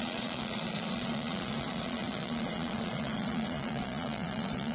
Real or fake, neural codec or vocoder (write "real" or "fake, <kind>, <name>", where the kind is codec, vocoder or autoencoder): fake, vocoder, Vocos